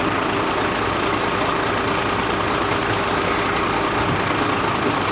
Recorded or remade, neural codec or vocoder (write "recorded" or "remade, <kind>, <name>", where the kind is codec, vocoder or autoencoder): recorded